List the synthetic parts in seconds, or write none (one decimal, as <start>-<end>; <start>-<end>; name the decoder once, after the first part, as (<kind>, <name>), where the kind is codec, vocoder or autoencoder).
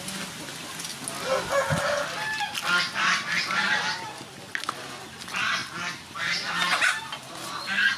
none